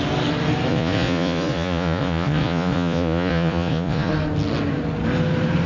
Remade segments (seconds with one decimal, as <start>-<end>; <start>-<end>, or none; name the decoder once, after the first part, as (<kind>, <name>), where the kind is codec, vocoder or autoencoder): 0.7-4.1 (vocoder, Vocos)